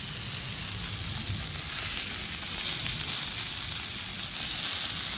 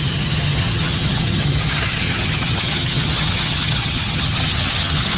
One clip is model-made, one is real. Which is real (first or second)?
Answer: first